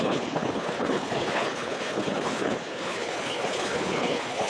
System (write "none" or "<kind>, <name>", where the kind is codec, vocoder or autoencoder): codec, HILCodec